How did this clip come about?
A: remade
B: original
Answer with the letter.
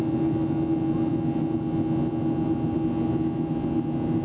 B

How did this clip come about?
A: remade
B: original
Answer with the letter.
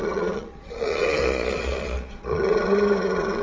A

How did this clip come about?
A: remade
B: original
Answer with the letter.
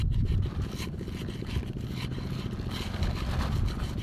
B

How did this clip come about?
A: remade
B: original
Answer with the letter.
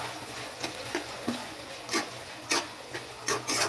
A